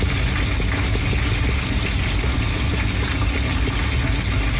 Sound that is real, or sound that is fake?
real